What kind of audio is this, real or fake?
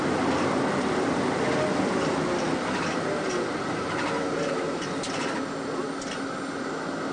real